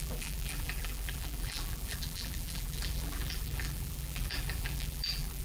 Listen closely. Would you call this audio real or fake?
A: fake